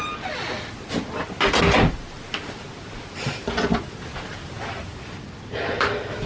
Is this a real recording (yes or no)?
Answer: yes